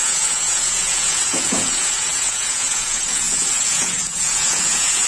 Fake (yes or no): yes